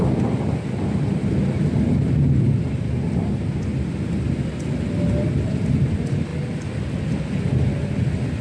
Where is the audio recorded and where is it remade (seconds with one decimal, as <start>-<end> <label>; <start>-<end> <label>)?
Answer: 0.0-8.4 recorded